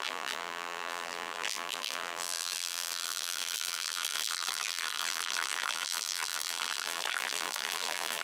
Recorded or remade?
remade